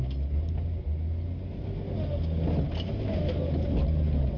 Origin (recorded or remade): recorded